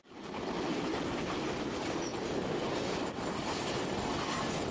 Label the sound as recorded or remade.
recorded